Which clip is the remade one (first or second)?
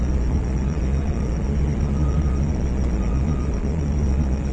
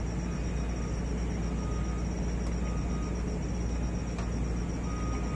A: first